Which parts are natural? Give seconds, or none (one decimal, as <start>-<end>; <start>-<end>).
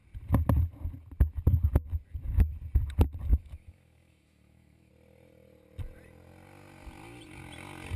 0.0-3.3; 4.9-8.0